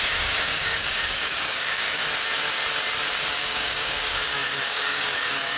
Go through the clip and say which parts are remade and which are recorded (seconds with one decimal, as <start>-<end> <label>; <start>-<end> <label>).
0.0-2.0 remade; 2.0-3.3 recorded; 3.3-5.6 remade